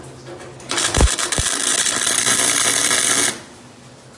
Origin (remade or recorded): recorded